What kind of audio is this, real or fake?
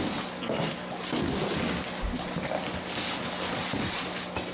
real